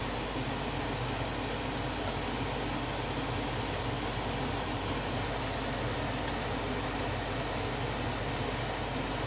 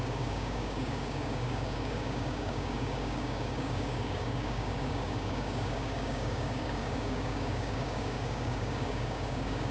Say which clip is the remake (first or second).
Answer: second